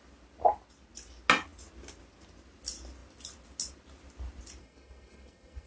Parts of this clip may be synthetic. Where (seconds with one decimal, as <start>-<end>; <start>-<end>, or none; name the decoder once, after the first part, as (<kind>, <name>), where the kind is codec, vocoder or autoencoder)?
4.6-5.7 (codec, SNAC)